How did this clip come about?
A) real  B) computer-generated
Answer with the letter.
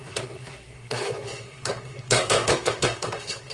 B